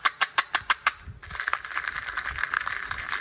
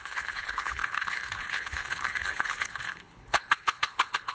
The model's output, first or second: second